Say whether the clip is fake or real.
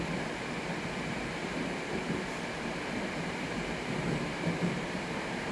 fake